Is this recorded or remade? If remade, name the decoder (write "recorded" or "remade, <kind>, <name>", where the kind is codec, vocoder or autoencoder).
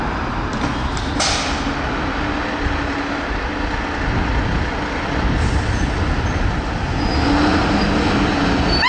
recorded